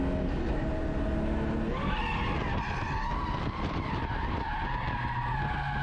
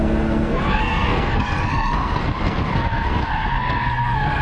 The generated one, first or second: second